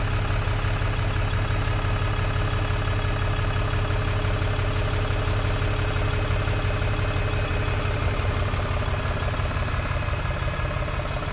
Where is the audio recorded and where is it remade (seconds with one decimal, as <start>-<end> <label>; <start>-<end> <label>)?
0.0-11.3 recorded